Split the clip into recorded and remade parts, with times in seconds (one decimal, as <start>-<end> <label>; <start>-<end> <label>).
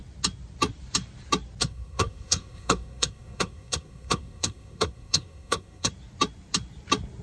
0.0-1.6 recorded; 1.6-5.9 remade; 5.9-7.2 recorded